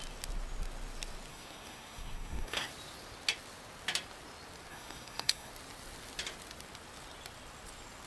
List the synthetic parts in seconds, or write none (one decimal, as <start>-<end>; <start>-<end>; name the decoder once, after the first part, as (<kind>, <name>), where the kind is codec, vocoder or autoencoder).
1.3-2.7 (codec, SNAC); 4.7-5.5